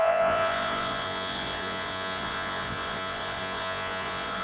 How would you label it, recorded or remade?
remade